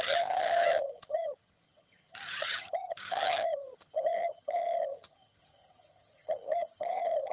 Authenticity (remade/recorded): remade